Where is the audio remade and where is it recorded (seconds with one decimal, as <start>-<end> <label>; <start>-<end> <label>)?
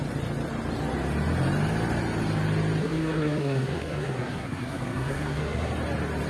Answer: 0.0-2.8 recorded; 2.8-5.7 remade; 5.7-6.3 recorded